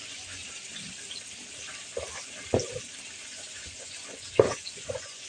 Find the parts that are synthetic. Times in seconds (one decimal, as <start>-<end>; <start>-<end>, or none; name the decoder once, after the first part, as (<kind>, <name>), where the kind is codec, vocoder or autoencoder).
0.0-0.4 (vocoder, Vocos); 3.2-5.3